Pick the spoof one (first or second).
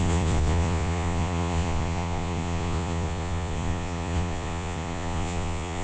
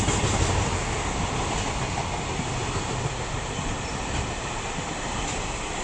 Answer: first